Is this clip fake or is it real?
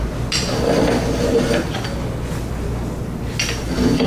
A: real